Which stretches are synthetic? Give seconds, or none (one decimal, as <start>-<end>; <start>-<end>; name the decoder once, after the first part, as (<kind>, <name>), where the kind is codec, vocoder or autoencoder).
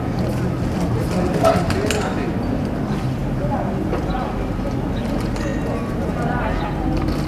none